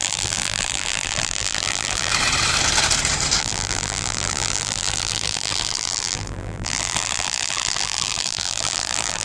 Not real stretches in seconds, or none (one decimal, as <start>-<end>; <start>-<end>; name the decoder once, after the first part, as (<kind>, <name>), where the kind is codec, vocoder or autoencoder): 0.0-2.1 (vocoder, BigVGAN v2); 3.4-9.2